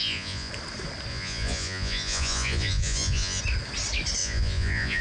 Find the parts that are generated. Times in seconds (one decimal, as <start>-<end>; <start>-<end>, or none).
0.0-0.5; 1.1-3.4; 4.2-5.0